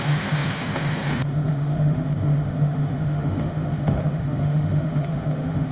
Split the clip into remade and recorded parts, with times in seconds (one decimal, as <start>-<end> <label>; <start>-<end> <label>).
0.0-5.7 remade